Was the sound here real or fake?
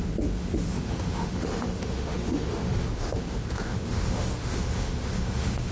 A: fake